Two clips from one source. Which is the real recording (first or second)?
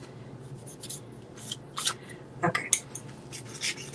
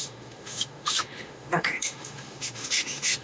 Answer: first